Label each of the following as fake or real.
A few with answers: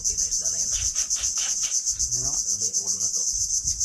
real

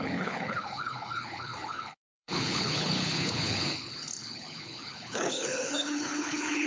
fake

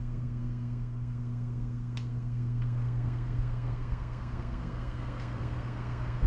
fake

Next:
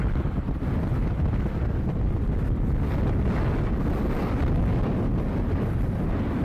real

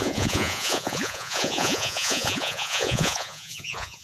fake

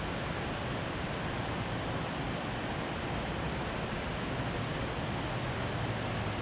real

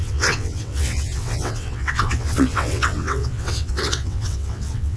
fake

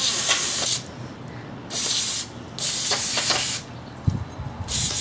real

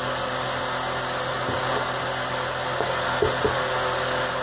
real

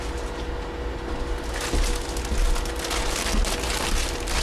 real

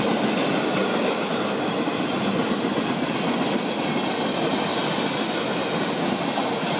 real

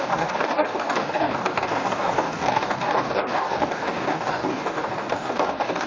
fake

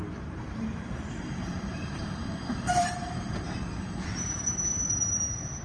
fake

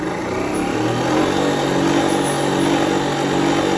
real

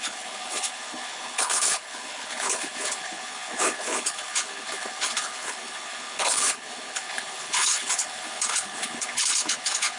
fake